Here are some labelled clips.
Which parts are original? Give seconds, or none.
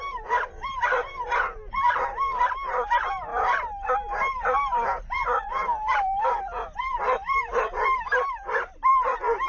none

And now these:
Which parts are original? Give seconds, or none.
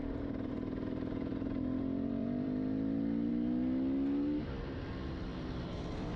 0.0-1.3; 3.3-5.3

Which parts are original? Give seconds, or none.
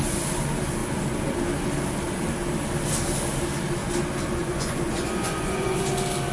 0.0-4.4; 5.8-6.3